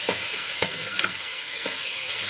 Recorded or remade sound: remade